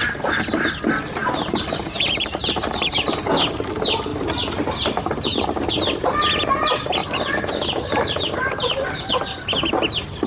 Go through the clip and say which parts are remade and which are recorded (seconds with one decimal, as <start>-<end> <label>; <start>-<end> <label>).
0.0-1.2 recorded; 1.2-3.3 remade; 3.3-4.1 recorded; 4.1-5.7 remade; 5.7-7.0 recorded; 7.0-9.1 remade; 9.1-10.3 recorded